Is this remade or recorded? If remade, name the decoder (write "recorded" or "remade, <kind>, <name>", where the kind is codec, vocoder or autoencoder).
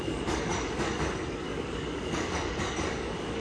remade, codec, DAC